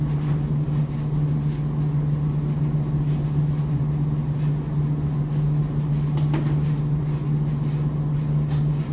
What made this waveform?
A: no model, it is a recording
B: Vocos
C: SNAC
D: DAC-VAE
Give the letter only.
A